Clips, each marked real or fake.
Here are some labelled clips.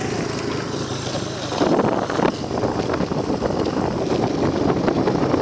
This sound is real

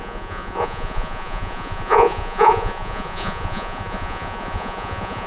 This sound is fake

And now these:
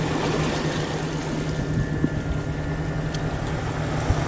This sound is real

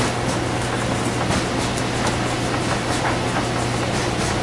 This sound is real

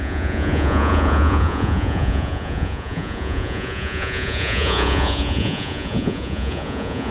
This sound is fake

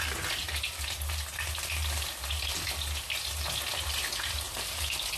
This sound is real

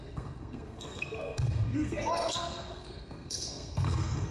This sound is fake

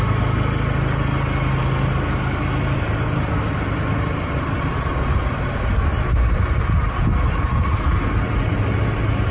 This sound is real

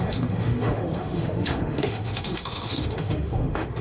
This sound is fake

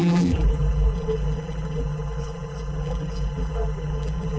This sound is fake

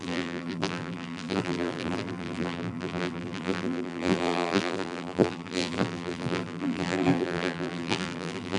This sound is fake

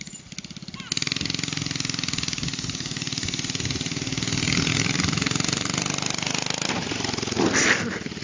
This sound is real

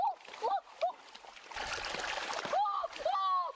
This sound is real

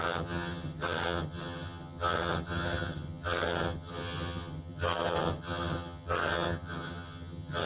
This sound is fake